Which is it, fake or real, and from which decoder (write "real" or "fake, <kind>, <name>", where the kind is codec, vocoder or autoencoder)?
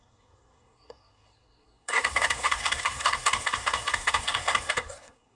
fake, codec, SNAC